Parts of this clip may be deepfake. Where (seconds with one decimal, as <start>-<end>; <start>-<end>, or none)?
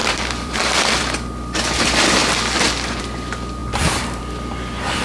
0.0-1.0; 3.6-4.2